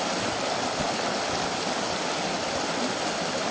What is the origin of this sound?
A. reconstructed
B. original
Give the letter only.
B